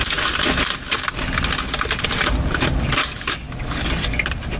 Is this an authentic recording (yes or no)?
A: yes